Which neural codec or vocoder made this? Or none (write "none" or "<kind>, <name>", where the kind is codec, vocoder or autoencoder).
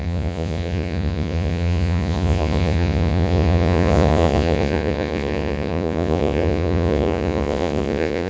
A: vocoder, Vocos